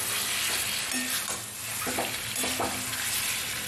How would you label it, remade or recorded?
remade